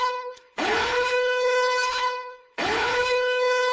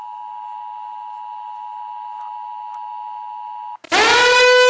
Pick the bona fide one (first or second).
second